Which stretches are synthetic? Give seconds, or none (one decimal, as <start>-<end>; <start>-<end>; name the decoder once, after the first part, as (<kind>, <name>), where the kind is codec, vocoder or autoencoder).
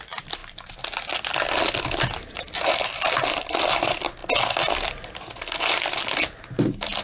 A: 0.0-0.4 (vocoder, BigVGAN v2); 2.7-4.2; 6.6-7.0